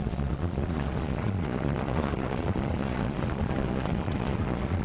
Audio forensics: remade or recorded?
remade